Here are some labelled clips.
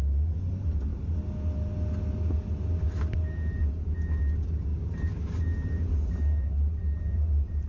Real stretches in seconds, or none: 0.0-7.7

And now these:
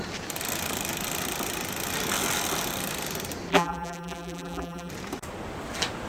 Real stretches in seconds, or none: 0.0-3.5; 4.9-6.1

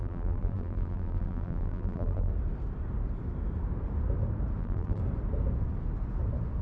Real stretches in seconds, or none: 2.3-4.6; 5.0-6.6

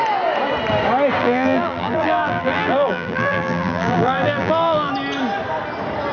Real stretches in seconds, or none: 0.0-1.2; 4.9-6.1

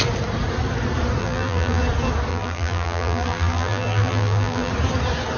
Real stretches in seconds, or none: 0.0-1.2; 1.8-2.3; 4.7-5.4

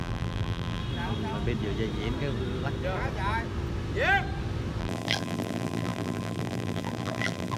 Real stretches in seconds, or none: 0.8-4.8

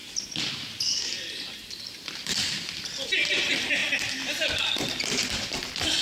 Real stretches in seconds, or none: 0.0-1.2; 1.6-2.2; 3.8-4.6

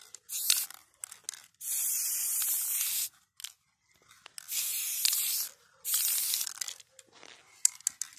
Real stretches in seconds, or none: 0.0-8.2